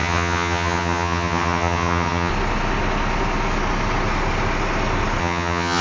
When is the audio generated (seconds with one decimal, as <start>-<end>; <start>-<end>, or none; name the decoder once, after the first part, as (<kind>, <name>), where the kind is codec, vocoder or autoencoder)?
0.0-2.3 (vocoder, HiFi-GAN); 5.2-5.8